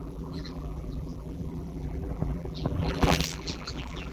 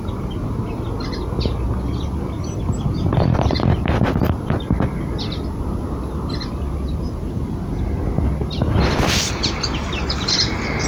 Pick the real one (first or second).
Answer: second